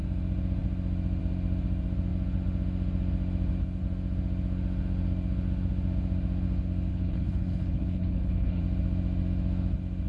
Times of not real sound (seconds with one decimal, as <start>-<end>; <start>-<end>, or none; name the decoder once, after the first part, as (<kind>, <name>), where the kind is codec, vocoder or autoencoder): 6.9-8.6 (codec, HILCodec)